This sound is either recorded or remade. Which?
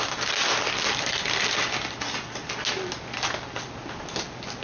recorded